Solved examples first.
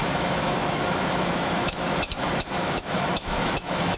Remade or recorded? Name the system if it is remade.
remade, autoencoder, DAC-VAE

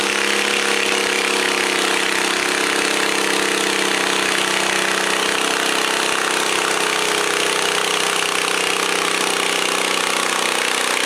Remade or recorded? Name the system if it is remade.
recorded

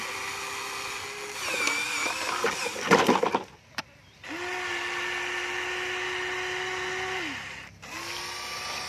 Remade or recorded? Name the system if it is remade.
recorded